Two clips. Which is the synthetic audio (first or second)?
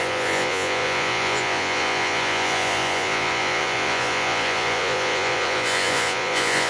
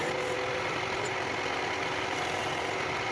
first